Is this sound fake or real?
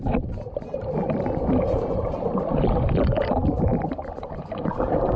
real